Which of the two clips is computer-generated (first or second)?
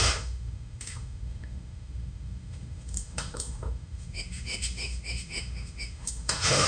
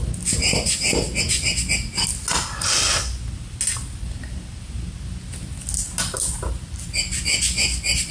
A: first